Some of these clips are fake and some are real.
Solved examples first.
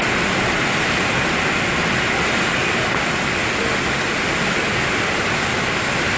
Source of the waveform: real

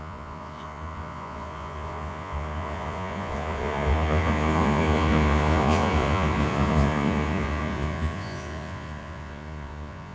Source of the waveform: fake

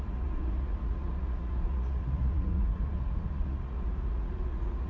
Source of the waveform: fake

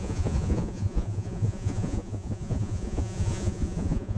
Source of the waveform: fake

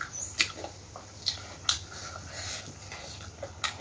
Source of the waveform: real